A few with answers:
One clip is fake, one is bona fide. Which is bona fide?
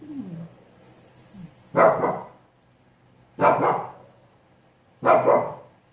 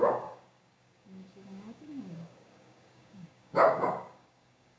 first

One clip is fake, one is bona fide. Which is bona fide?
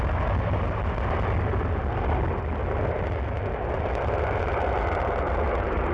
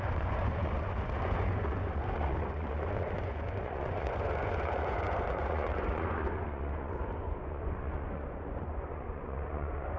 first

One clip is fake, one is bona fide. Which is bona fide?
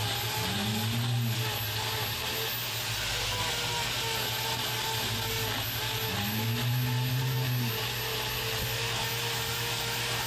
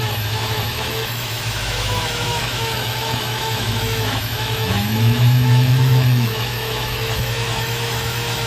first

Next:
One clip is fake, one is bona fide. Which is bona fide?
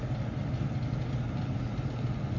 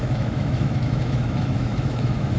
first